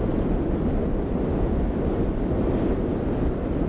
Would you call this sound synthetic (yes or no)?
no